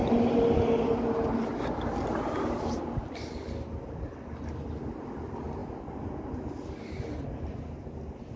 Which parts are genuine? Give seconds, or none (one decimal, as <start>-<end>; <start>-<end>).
0.0-8.4